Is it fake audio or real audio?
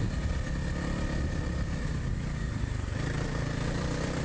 real